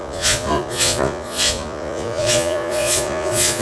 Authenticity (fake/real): fake